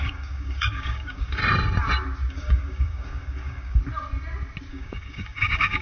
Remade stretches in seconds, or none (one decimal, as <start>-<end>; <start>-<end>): 0.0-1.4; 2.3-3.8; 4.7-5.8

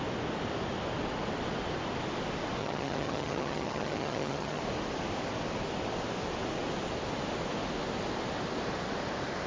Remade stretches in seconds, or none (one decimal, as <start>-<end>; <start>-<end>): 2.6-4.6

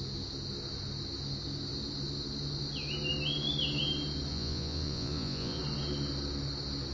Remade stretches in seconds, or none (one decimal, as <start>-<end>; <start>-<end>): 4.3-5.6

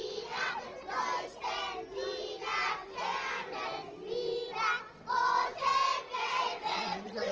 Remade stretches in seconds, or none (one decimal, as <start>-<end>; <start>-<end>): 0.0-0.7; 5.1-5.7; 6.3-7.3

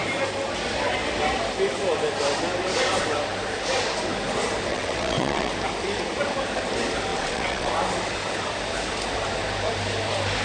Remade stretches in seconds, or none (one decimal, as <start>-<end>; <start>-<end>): 4.7-5.5; 7.1-7.7